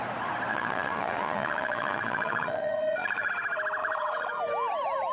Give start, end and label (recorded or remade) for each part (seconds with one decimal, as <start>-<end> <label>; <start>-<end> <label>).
0.0-0.5 recorded; 0.5-3.3 remade; 3.3-3.8 recorded; 3.8-4.4 remade; 4.4-5.1 recorded